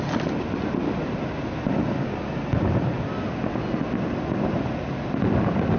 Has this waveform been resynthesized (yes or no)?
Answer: no